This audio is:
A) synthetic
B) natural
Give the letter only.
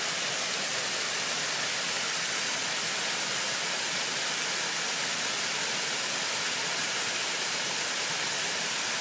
B